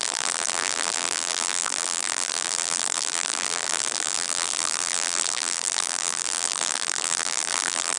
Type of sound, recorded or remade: remade